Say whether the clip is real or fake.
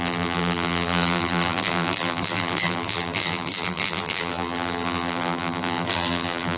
fake